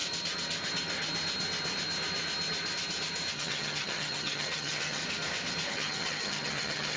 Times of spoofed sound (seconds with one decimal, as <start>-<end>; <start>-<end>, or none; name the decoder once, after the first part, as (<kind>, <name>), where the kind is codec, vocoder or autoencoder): 3.3-5.0 (vocoder, HiFi-GAN); 5.7-7.0